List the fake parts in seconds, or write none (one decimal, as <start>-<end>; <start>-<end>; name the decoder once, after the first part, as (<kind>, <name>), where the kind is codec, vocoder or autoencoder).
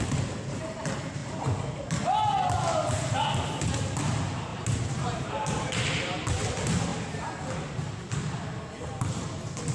4.5-5.9 (vocoder, BigVGAN v2)